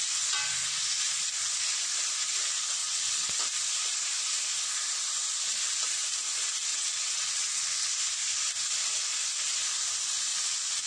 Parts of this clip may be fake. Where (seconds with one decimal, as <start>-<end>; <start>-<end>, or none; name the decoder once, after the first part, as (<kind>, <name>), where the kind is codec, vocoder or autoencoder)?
2.8-3.4 (vocoder, WaveNeXt); 6.7-7.9; 10.3-10.9